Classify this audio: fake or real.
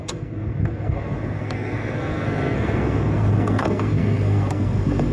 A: fake